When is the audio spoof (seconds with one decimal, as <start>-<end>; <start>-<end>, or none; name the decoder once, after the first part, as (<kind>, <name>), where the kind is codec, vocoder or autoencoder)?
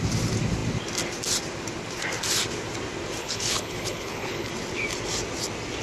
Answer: 3.2-4.5 (codec, HILCodec)